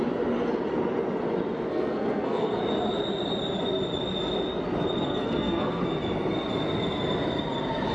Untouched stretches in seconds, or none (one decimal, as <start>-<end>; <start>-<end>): 0.0-1.7; 2.6-5.0; 5.8-7.9